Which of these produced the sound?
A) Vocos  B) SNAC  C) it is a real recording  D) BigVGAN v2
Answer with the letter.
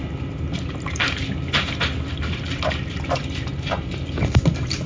C